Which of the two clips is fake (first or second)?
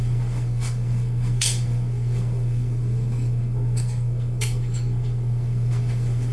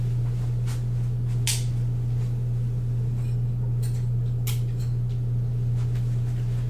first